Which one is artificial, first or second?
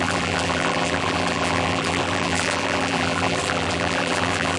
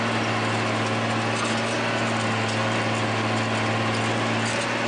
first